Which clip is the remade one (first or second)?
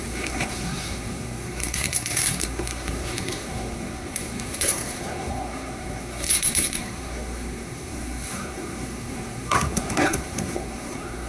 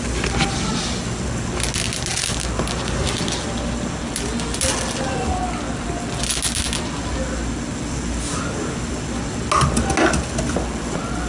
first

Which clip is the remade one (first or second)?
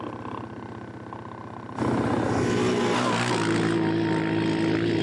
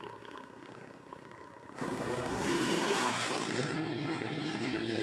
second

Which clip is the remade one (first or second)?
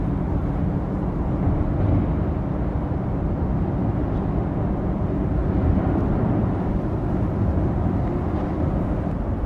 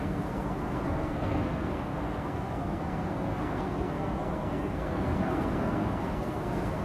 second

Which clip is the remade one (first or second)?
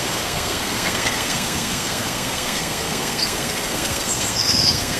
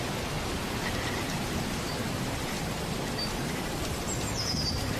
first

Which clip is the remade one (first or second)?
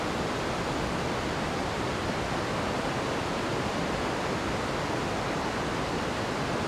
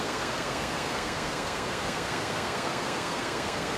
second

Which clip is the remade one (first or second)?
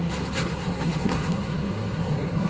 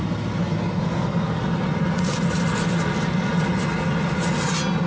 first